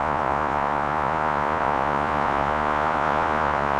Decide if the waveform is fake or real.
fake